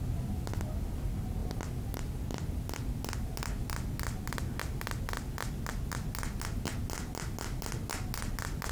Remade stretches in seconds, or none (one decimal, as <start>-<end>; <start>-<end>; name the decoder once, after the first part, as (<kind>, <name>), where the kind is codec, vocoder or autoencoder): none